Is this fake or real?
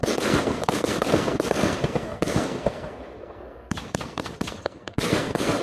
fake